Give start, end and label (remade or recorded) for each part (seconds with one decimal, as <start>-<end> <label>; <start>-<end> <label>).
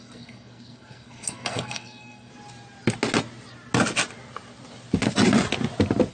0.0-2.3 remade; 2.3-6.1 recorded